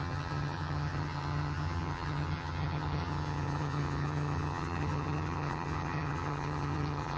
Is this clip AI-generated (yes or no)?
yes